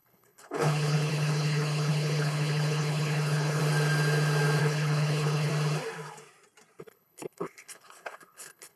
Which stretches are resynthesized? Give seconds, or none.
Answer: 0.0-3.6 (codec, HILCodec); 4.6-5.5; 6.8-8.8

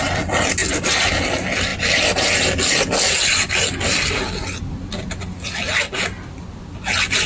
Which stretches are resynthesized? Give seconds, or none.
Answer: none

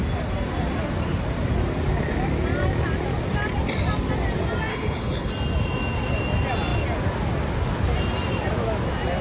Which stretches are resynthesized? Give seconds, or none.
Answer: 4.7-5.3 (codec, HILCodec)

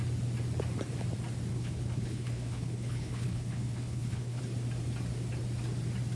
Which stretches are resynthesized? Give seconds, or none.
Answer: 1.5-4.4 (codec, HILCodec)